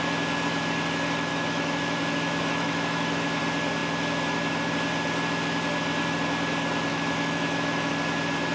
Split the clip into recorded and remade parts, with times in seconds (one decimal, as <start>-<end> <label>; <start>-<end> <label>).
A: 0.0-1.3 recorded; 1.3-3.4 remade; 3.4-6.9 recorded; 6.9-7.9 remade; 7.9-8.5 recorded

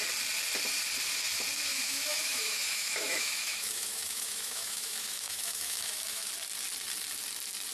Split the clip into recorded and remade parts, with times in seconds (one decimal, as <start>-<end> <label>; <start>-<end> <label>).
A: 0.0-1.7 recorded; 1.7-6.3 remade; 6.3-7.7 recorded

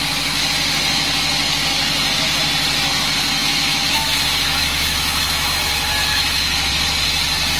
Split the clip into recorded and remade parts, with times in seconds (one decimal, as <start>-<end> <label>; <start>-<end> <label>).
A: 0.0-3.4 recorded; 3.4-5.6 remade; 5.6-6.1 recorded; 6.1-6.7 remade; 6.7-7.6 recorded

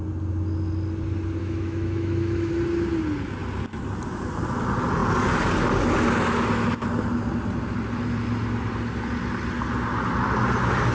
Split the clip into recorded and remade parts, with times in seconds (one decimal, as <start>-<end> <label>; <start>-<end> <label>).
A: 0.0-1.4 recorded; 1.4-2.5 remade; 2.5-10.9 recorded